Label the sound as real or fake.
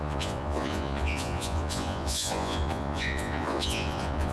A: fake